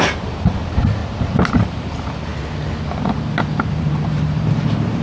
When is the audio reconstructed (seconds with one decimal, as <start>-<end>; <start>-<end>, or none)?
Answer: 0.0-1.0; 1.5-2.3; 3.7-5.0